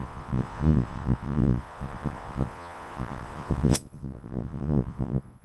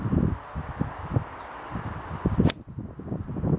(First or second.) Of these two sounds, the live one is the second